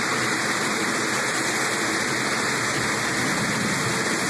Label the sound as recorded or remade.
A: recorded